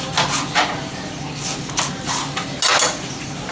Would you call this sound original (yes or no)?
yes